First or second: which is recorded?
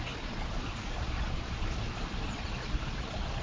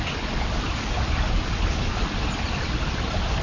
second